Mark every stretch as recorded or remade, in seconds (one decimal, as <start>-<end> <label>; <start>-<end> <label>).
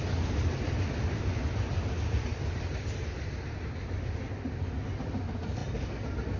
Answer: 0.0-6.4 recorded